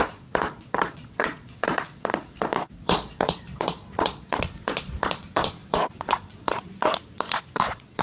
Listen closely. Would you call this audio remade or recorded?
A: remade